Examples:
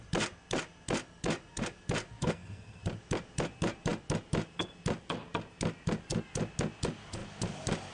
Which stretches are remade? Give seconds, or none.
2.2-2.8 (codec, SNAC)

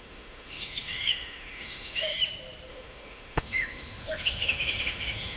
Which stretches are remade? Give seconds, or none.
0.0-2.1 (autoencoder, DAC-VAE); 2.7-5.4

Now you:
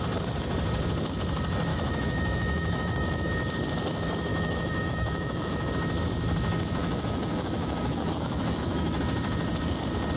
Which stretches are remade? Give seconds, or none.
1.7-3.3 (autoencoder, DAC-VAE); 4.3-5.7; 6.8-9.0